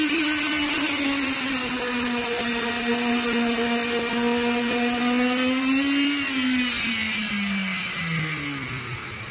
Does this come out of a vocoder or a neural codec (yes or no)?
no